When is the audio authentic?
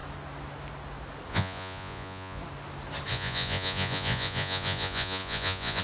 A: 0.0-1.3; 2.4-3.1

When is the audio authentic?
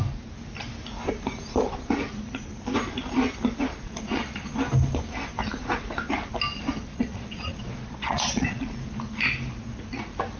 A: 0.0-3.7; 4.5-6.9; 8.6-10.4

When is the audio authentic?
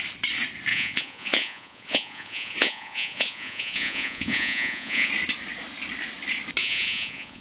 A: 0.0-0.7; 5.1-6.6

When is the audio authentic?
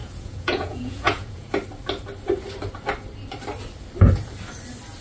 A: 1.5-5.0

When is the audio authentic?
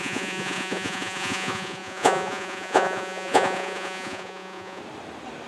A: 4.8-5.5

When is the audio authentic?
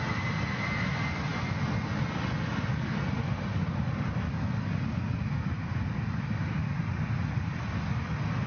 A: 0.0-8.5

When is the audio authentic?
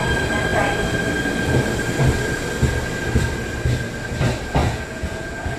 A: 0.0-4.6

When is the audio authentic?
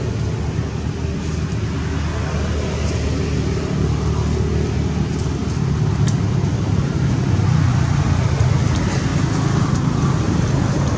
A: 0.0-11.0